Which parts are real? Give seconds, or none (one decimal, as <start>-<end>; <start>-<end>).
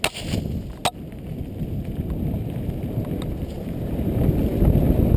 0.0-5.2